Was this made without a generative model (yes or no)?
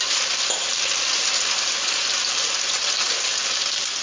no